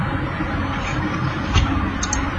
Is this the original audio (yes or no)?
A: yes